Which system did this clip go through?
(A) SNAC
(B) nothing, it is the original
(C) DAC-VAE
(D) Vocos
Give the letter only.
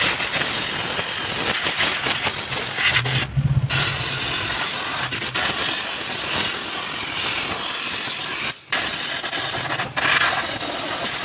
B